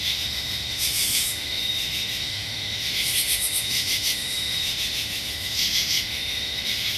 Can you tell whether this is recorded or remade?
remade